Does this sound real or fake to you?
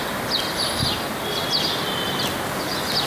real